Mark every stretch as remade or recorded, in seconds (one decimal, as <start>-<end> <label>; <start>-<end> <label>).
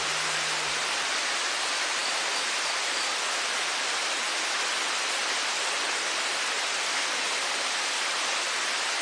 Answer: 0.0-9.0 recorded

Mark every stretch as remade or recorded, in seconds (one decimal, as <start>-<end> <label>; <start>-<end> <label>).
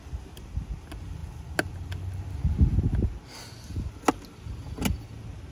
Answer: 0.0-5.5 recorded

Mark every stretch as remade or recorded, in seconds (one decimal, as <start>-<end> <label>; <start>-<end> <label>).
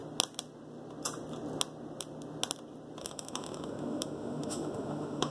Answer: 0.0-3.0 recorded; 3.0-5.3 remade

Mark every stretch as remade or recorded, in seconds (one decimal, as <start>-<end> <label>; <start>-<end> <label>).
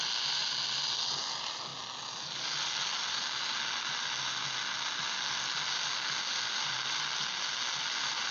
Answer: 0.0-8.3 recorded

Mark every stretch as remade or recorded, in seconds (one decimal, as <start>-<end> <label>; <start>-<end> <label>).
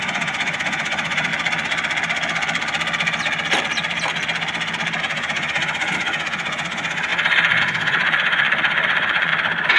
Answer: 0.0-1.3 remade; 1.3-5.0 recorded; 5.0-7.1 remade; 7.1-7.6 recorded; 7.6-9.3 remade; 9.3-9.8 recorded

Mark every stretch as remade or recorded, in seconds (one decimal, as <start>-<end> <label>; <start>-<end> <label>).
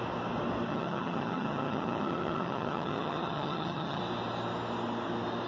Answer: 0.0-0.7 recorded; 0.7-4.0 remade; 4.0-5.5 recorded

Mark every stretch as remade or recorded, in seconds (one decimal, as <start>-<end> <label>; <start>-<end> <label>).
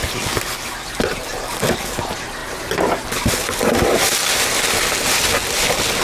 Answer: 0.0-6.0 recorded